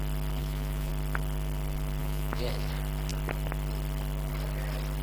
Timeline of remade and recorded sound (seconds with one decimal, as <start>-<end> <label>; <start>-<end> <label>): 0.0-0.4 recorded; 0.4-0.9 remade; 0.9-2.0 recorded; 2.0-2.7 remade; 2.7-5.0 recorded